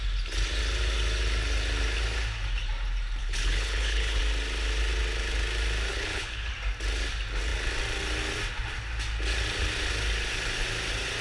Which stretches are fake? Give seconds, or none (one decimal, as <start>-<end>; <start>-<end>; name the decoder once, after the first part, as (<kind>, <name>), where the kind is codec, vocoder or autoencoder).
3.2-4.2 (codec, HILCodec); 5.9-6.5